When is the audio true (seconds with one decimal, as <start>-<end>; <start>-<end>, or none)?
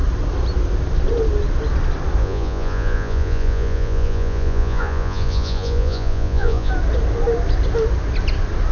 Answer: 0.0-2.2; 6.7-8.7